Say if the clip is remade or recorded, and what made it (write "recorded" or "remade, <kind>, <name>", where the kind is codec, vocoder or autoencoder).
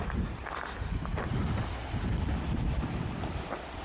recorded